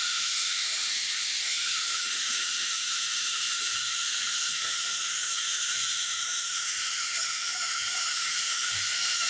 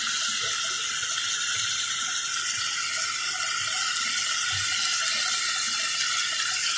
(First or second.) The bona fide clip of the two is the second